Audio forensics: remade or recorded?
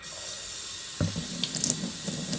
recorded